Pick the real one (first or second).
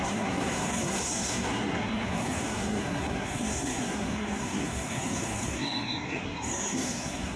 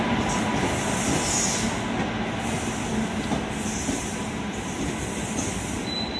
second